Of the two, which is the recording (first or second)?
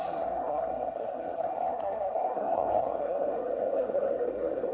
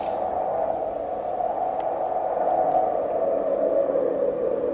second